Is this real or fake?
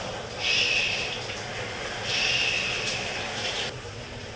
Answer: real